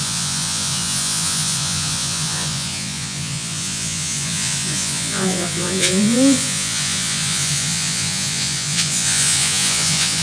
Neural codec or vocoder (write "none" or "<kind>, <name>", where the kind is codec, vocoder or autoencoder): vocoder, Vocos